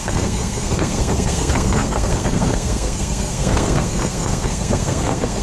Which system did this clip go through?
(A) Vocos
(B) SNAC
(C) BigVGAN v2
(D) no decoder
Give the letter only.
B